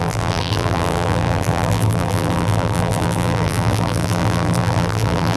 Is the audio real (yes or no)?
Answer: no